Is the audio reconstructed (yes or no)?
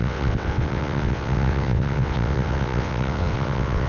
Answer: yes